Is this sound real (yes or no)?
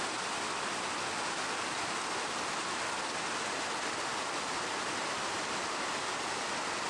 yes